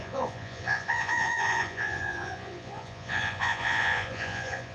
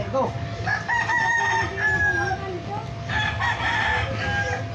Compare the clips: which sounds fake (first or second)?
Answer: first